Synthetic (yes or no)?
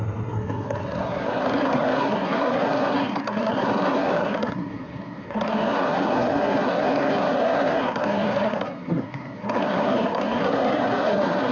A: yes